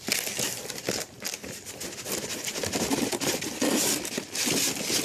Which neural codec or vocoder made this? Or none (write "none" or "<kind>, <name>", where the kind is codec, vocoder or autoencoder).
none